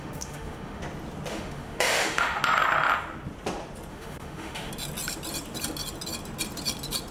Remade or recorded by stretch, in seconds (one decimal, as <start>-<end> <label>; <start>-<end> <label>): 0.0-0.8 remade; 0.8-1.3 recorded; 1.3-2.4 remade; 2.4-3.9 recorded; 3.9-4.7 remade; 4.7-7.1 recorded